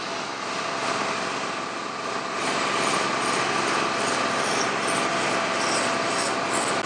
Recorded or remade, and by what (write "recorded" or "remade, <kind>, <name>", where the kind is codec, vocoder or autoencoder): recorded